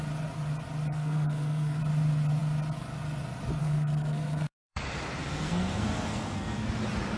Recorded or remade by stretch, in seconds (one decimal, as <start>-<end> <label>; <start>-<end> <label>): 0.0-0.9 recorded; 0.9-1.8 remade; 1.8-3.6 recorded; 3.6-4.8 remade; 4.8-5.3 recorded; 5.3-6.7 remade; 6.7-7.2 recorded